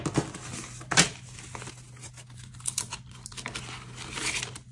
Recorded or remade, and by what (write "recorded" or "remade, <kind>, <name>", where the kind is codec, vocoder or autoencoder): recorded